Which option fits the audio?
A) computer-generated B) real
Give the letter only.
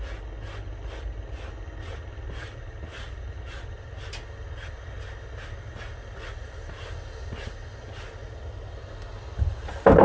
B